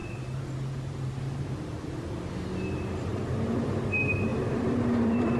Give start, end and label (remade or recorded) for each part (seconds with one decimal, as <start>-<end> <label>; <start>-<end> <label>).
0.0-1.2 remade; 1.2-3.1 recorded; 3.1-3.7 remade; 3.7-4.3 recorded; 4.3-5.4 remade